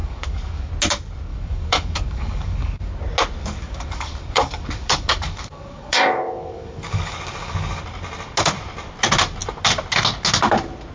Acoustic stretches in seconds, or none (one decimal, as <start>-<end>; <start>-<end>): 0.7-1.3; 2.9-3.4; 7.8-10.9